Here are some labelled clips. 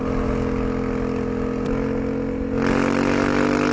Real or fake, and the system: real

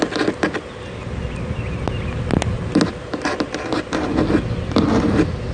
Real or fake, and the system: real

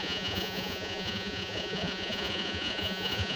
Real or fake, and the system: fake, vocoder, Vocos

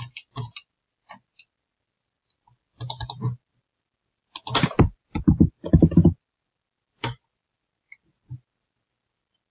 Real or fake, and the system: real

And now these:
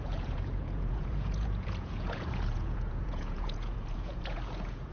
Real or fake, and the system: fake, vocoder, Vocos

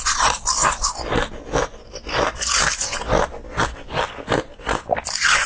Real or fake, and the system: real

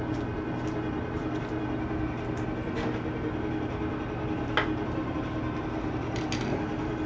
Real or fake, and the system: real